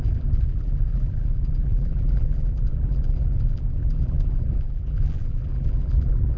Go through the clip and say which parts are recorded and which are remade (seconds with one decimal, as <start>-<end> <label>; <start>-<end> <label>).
0.0-6.4 remade

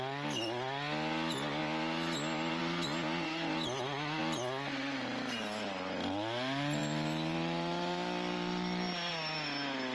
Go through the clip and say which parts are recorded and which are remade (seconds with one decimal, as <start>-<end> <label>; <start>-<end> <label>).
0.0-6.8 recorded; 6.8-9.1 remade; 9.1-9.9 recorded

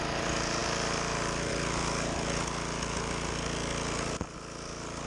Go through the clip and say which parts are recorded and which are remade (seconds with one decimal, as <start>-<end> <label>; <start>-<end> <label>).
0.0-0.6 recorded; 0.6-1.5 remade; 1.5-5.1 recorded

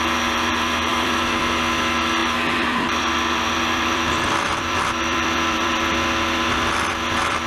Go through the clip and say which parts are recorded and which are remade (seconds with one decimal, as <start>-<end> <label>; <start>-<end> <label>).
0.0-0.9 recorded; 0.9-1.4 remade; 1.4-2.2 recorded; 2.2-5.9 remade; 5.9-7.5 recorded

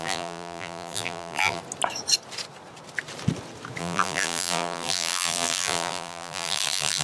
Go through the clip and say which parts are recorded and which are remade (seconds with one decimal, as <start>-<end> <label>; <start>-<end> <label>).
0.0-1.6 remade; 1.6-3.8 recorded; 3.8-7.0 remade